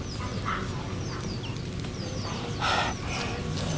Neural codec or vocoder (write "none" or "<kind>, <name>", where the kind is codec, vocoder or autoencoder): none